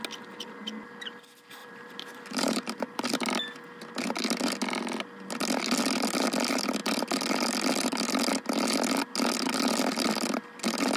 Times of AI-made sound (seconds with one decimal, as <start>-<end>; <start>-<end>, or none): 1.6-3.0